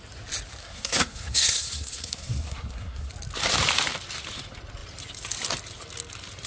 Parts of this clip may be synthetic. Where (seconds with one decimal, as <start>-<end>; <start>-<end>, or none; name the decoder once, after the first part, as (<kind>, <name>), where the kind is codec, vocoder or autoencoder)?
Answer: 0.6-3.1 (codec, SNAC)